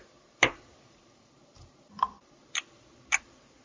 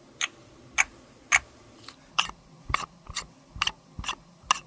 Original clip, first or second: second